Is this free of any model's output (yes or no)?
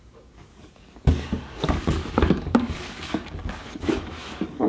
no